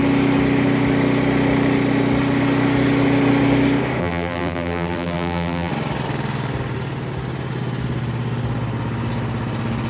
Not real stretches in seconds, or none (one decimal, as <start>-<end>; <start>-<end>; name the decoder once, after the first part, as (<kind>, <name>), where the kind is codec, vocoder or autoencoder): 4.0-5.7 (vocoder, BigVGAN v2)